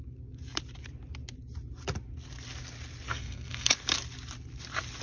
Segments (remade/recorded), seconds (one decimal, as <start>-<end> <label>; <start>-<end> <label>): 0.0-3.1 recorded; 3.1-3.7 remade; 3.7-5.0 recorded